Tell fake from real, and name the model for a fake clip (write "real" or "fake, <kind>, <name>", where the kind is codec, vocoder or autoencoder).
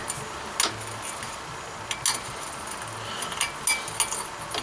real